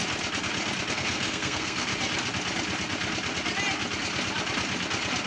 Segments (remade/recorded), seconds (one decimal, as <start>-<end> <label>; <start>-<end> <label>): 0.0-0.9 recorded; 0.9-1.9 remade; 1.9-5.3 recorded